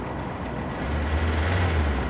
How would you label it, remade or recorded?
recorded